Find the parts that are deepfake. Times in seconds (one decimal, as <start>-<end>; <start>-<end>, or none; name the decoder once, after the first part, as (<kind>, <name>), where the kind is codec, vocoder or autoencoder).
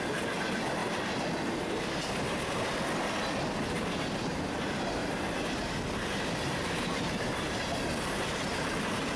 0.8-1.7 (vocoder, BigVGAN v2); 5.0-5.9